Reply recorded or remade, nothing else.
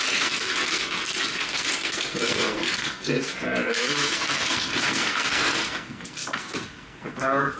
remade